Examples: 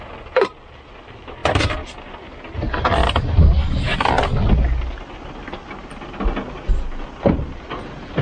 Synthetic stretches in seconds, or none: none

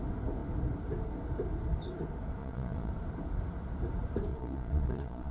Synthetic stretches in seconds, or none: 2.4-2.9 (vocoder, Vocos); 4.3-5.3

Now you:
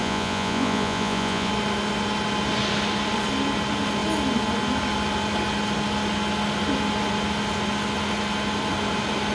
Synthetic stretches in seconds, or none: 0.0-1.5 (vocoder, Vocos)

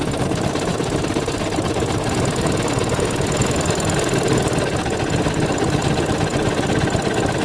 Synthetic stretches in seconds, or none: none

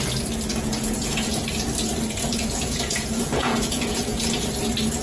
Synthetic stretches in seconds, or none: 0.5-1.3 (vocoder, Vocos); 2.3-4.5

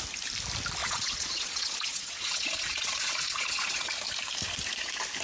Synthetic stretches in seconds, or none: 0.8-3.9 (vocoder, Vocos)

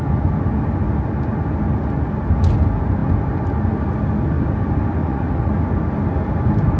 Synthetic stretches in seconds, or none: 5.0-5.5 (vocoder, Vocos)